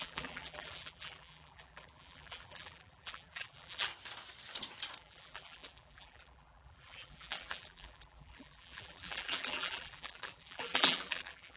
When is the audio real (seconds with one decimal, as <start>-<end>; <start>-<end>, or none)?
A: 3.9-5.0